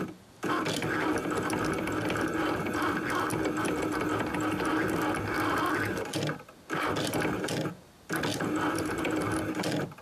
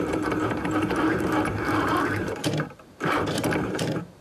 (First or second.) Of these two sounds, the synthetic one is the second